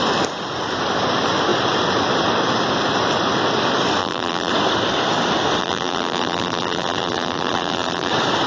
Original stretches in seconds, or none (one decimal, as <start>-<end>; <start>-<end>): 0.0-4.0; 4.5-5.6; 8.1-8.5